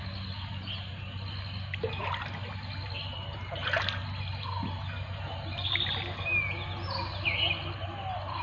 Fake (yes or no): no